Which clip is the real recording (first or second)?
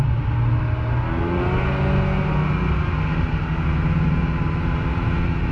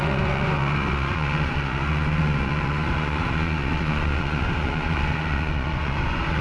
first